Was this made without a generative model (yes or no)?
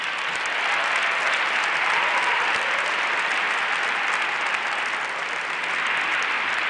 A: yes